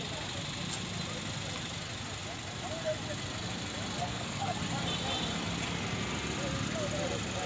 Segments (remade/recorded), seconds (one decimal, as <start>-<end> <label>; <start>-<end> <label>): 0.0-4.0 recorded; 4.0-4.6 remade; 4.6-7.5 recorded